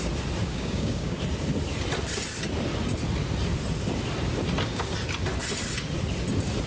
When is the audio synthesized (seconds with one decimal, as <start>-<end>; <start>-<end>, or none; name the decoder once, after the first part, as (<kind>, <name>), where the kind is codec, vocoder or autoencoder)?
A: 0.4-1.2 (codec, DAC)

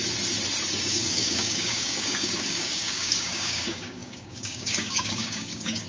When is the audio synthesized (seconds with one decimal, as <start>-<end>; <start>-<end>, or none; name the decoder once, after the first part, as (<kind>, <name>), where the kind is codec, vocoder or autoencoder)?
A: 0.8-5.9 (codec, DAC)

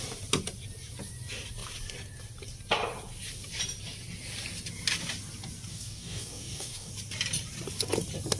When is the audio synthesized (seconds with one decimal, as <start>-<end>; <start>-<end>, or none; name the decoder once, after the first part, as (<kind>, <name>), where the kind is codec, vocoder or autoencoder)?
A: 5.7-6.9 (codec, DAC)

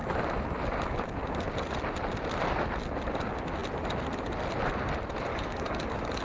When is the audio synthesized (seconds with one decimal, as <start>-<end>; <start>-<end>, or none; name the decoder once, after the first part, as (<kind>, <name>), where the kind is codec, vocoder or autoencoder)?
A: 5.3-6.2 (codec, DAC)

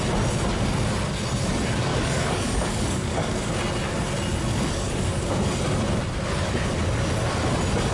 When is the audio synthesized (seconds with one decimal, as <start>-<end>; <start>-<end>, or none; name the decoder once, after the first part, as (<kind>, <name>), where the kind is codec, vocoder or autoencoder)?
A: 1.9-3.5 (codec, DAC); 4.5-5.3